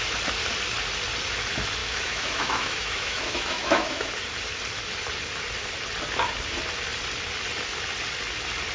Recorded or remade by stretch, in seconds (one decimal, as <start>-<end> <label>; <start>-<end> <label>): 0.0-1.8 recorded; 1.8-4.1 remade; 4.1-8.7 recorded

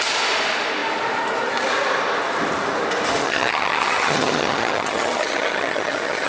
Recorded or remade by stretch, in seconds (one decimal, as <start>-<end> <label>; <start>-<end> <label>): 0.0-3.2 recorded; 3.2-6.3 remade

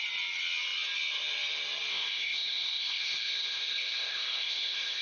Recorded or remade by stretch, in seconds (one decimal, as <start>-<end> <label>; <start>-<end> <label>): 0.0-1.9 recorded; 1.9-5.0 remade

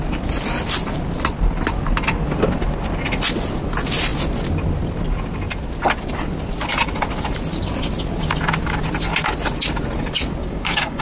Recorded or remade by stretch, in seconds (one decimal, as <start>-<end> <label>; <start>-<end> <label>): 0.0-10.4 recorded; 10.4-11.0 remade

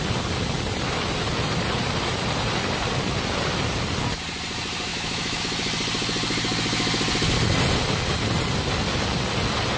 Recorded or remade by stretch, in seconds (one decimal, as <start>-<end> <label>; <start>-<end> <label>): 0.0-4.9 recorded; 4.9-5.4 remade; 5.4-9.8 recorded

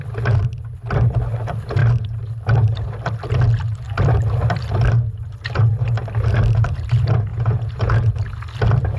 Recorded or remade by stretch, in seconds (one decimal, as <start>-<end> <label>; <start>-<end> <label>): 0.0-7.3 recorded; 7.3-8.1 remade; 8.1-9.0 recorded